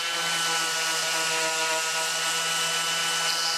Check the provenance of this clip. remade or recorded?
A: recorded